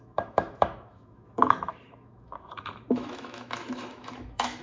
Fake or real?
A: fake